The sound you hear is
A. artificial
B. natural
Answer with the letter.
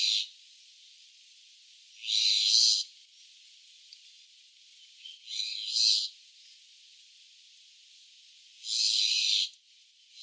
B